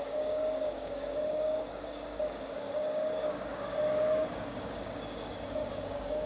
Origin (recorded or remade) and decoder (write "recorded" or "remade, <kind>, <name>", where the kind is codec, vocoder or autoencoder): remade, codec, DAC